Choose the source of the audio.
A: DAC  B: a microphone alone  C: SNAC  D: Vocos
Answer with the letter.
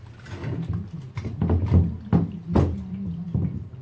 B